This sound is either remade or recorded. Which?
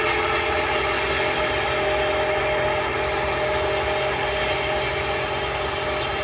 recorded